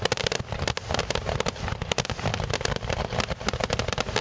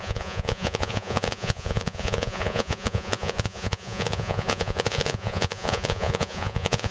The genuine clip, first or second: first